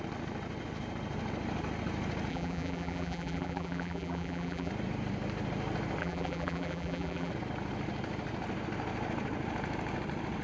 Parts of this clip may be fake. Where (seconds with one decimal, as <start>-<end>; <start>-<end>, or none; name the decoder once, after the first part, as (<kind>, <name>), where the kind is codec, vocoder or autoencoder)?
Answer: 2.3-4.7 (vocoder, BigVGAN v2); 6.0-7.3